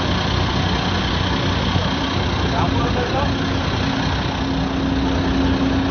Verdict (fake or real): real